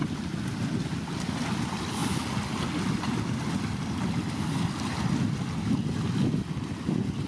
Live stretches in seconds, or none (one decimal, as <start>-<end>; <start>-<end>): 0.0-7.3